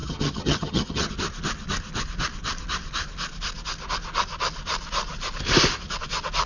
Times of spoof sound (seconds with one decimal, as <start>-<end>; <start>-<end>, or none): 0.0-1.1